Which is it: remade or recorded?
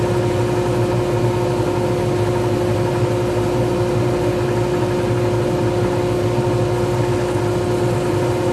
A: recorded